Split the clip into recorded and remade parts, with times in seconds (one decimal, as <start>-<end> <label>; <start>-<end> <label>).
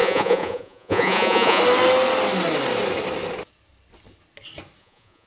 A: 0.0-1.6 remade; 1.6-4.8 recorded; 4.8-5.3 remade